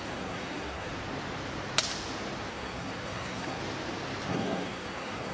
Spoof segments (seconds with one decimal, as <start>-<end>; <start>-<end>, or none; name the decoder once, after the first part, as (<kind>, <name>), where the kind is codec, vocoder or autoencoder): 0.0-0.9 (codec, SNAC); 2.5-3.6; 4.3-5.3